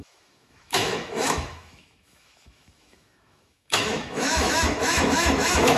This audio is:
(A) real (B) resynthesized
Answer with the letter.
B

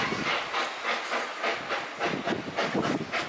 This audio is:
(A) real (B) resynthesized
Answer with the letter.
A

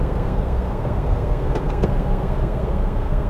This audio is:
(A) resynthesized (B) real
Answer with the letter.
A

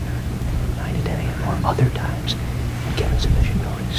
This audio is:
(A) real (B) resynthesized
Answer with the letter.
A